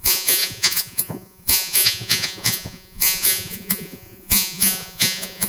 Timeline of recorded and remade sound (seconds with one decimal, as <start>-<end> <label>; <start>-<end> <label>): 0.0-5.5 remade